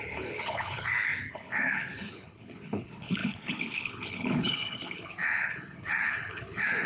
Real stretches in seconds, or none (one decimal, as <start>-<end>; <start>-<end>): none

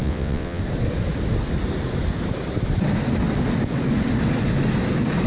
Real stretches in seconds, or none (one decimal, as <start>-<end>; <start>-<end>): 0.6-5.3

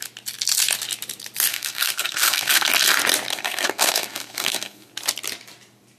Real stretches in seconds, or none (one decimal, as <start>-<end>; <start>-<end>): 0.0-1.5; 2.7-3.3; 4.9-6.0